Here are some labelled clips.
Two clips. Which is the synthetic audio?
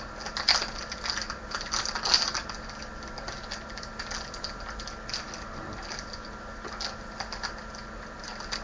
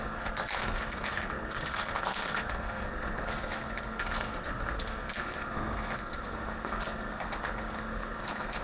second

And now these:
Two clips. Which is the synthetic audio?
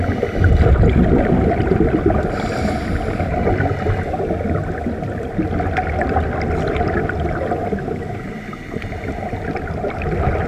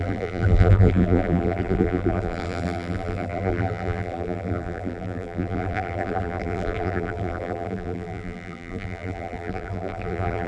second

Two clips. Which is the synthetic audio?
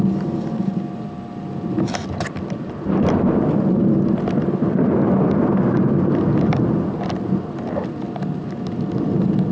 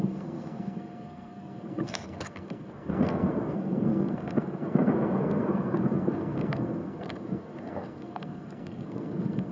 second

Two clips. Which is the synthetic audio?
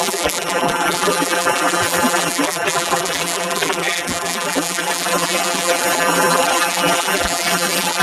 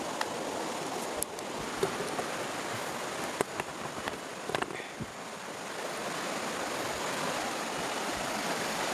first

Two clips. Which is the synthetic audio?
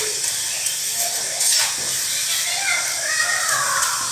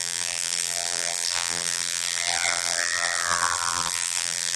second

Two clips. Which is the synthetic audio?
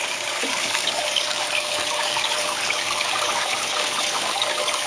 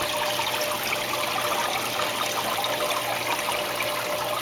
first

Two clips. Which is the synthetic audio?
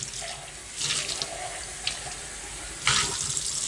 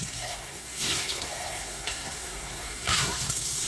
second